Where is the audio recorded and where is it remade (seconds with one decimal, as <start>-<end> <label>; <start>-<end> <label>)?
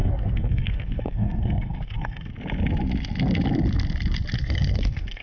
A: 0.0-2.3 remade; 2.3-4.4 recorded; 4.4-5.2 remade